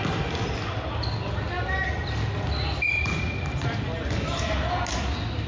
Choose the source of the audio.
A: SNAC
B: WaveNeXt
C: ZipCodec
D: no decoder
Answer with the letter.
D